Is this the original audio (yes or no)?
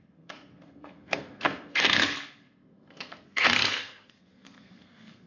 no